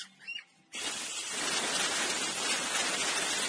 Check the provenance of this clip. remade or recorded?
recorded